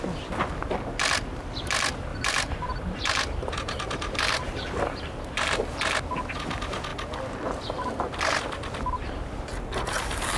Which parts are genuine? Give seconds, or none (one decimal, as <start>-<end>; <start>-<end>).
0.0-2.1; 5.6-10.4